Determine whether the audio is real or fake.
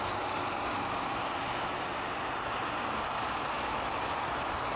real